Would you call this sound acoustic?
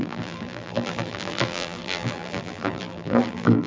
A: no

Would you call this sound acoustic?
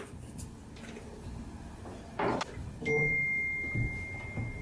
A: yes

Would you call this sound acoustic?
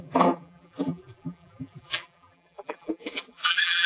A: no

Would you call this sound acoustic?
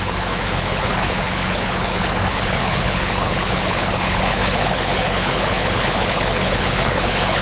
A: no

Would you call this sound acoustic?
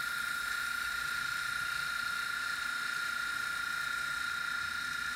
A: yes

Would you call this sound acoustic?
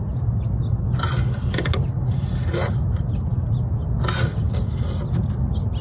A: yes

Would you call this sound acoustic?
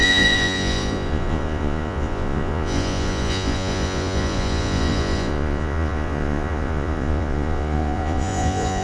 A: no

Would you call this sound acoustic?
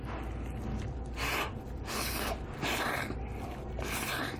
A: yes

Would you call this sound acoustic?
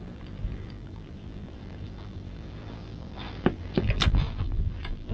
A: no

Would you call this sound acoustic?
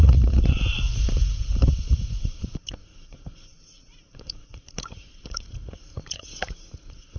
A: no